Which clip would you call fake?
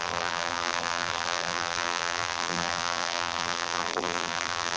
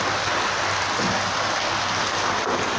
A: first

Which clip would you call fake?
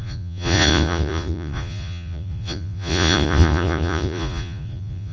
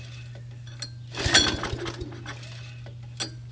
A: first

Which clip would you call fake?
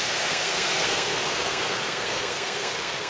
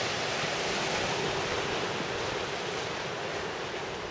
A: first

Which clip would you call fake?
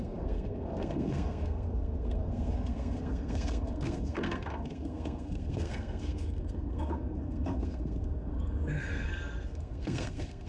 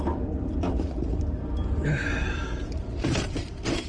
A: first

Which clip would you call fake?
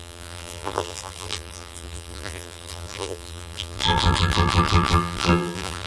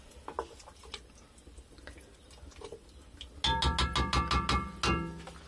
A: first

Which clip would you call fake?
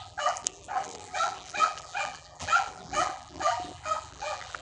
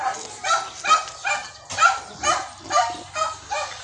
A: first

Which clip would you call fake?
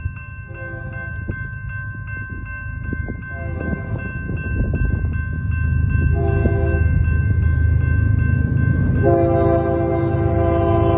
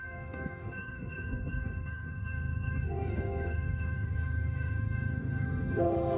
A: second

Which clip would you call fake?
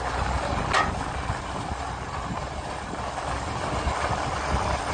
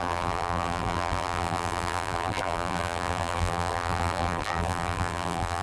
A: second